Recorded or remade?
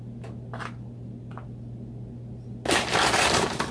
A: recorded